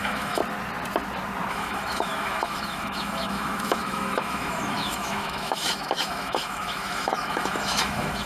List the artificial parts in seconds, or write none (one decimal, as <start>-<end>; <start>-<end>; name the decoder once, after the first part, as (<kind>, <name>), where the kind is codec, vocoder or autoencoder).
0.0-0.4 (autoencoder, DAC-VAE); 1.5-8.3